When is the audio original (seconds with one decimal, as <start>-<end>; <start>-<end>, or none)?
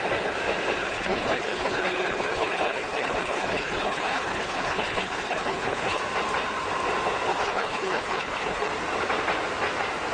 0.0-0.8; 6.0-7.3; 8.7-10.1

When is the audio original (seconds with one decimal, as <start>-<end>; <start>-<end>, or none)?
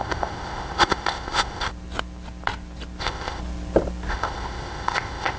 1.7-3.0; 3.4-4.1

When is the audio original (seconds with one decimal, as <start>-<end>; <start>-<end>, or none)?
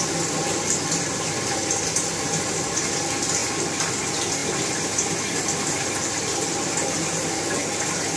0.0-8.2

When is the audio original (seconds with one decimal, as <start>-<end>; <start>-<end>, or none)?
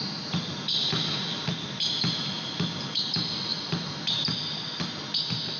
0.0-3.5; 4.8-5.6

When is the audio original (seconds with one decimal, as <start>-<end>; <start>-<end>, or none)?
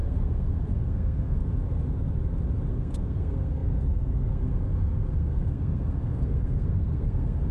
1.4-2.7